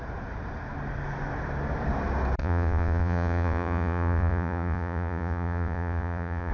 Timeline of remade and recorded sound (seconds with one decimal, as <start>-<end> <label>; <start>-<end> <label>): 0.0-2.4 recorded; 2.4-6.5 remade

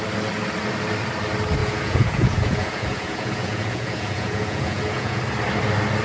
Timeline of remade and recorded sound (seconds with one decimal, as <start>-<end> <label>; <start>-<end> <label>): 0.0-1.6 recorded; 1.6-5.2 remade; 5.2-6.0 recorded

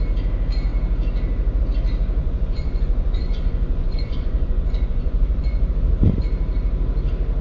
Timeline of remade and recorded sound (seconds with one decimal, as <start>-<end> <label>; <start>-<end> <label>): 0.0-2.2 recorded; 2.2-5.7 remade; 5.7-7.4 recorded